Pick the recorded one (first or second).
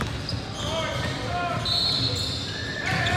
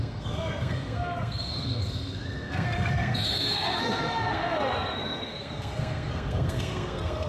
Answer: first